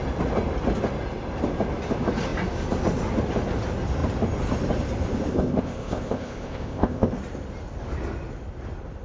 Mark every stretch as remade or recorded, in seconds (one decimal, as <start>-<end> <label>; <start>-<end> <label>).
0.0-5.3 recorded; 5.3-7.1 remade; 7.1-9.0 recorded